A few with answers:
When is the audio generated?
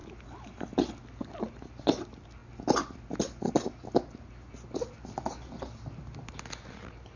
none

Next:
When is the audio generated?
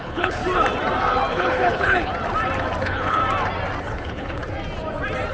0.0-0.4 (codec, HILCodec); 1.3-2.1; 2.8-3.2; 3.8-4.4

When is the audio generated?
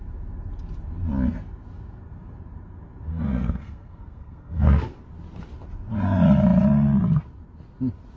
3.1-5.0 (codec, SNAC)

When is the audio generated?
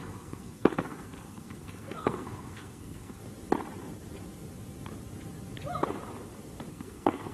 0.0-3.2 (codec, SNAC); 6.7-7.3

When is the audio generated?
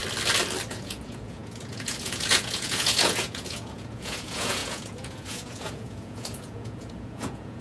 0.7-7.6 (vocoder, Vocos)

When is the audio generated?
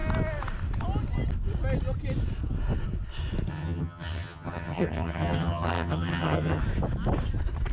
3.5-6.6 (vocoder, HiFi-GAN)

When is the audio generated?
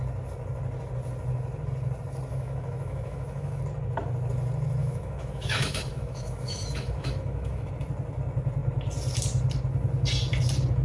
2.3-3.6 (autoencoder, DAC-VAE); 4.8-7.7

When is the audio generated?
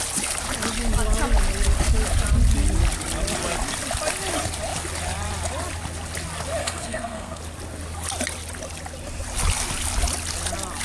6.6-7.4 (codec, SNAC)